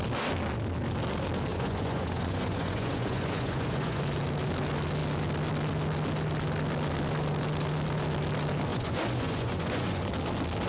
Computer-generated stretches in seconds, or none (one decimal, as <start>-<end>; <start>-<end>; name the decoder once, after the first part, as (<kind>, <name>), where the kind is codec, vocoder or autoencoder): 1.5-4.0 (vocoder, Vocos); 8.7-10.1